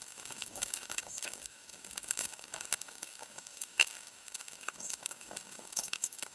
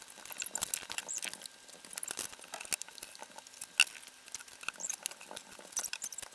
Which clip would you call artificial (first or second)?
first